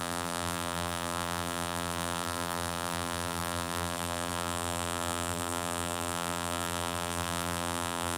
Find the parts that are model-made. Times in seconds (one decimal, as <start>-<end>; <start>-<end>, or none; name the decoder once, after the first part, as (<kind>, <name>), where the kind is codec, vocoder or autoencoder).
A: 0.0-8.2 (vocoder, BigVGAN v2)